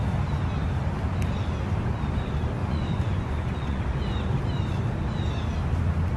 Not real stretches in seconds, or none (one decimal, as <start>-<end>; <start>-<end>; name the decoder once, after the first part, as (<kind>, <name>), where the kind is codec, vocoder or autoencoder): 2.6-3.8 (vocoder, Vocos)